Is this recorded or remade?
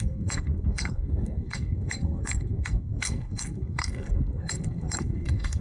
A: remade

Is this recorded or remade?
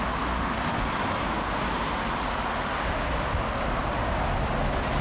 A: recorded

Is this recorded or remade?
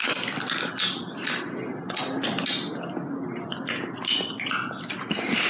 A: recorded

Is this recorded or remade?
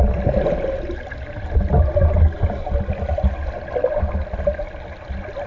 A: recorded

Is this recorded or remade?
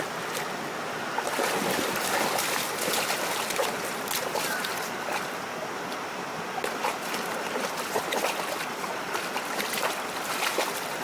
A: recorded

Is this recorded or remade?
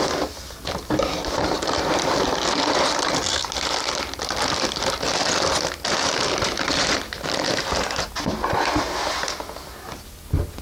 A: recorded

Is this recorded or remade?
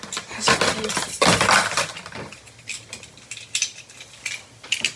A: recorded